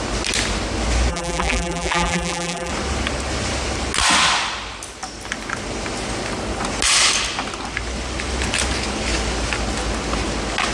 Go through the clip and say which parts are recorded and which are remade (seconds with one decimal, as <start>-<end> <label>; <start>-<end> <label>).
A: 0.0-1.1 recorded; 1.1-2.7 remade; 2.7-10.7 recorded